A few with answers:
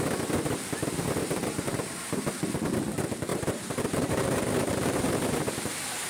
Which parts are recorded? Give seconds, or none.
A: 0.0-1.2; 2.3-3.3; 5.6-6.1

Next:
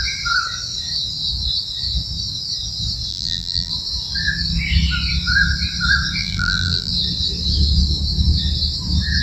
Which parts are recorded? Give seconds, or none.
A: 0.0-3.1; 3.7-6.2; 6.9-9.2

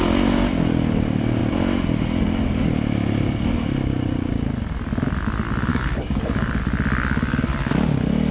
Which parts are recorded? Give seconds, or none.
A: 0.0-5.7; 6.6-8.3

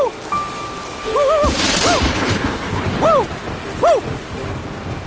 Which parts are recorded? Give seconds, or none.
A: 0.0-2.1; 2.8-5.1